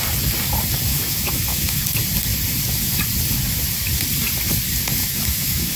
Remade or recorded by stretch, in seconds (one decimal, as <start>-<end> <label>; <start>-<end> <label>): 0.0-0.9 recorded; 0.9-1.8 remade; 1.8-5.0 recorded; 5.0-5.8 remade